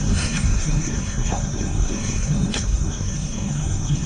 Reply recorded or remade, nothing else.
remade